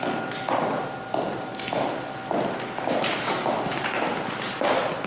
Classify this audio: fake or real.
real